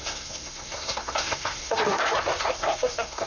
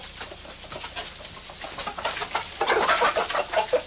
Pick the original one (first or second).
second